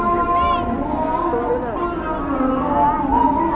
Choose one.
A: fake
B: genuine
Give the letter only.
B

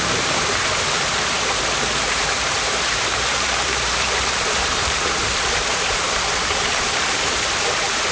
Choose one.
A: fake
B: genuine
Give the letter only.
A